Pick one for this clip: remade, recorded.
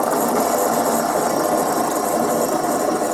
recorded